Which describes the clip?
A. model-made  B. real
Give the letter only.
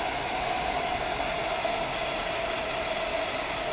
B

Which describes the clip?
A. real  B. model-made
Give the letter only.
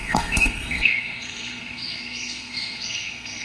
B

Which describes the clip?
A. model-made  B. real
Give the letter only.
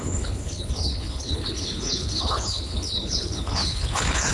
A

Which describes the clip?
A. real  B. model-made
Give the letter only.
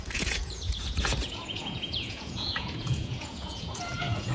B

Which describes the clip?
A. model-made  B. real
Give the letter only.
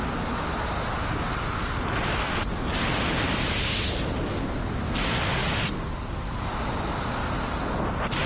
B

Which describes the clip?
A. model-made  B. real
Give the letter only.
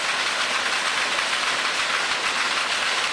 B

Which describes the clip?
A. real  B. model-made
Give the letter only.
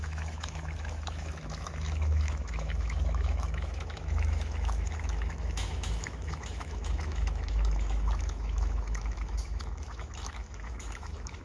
B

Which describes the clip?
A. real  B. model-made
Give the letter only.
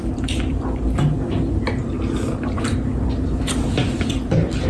B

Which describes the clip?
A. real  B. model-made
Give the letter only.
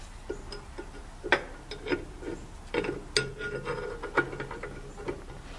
A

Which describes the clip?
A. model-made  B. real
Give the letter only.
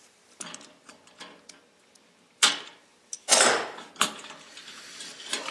A